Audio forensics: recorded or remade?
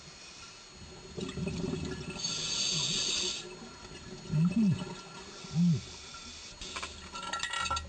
recorded